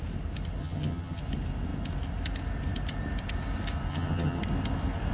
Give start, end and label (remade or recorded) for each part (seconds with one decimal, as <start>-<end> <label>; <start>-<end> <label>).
0.0-0.6 recorded; 0.6-1.2 remade; 1.2-3.9 recorded; 3.9-4.4 remade; 4.4-5.1 recorded